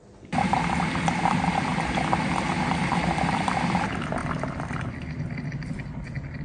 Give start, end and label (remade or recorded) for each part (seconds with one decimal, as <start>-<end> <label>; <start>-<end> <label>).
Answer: 0.0-6.4 recorded